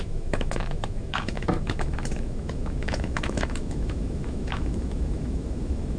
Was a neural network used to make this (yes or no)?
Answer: yes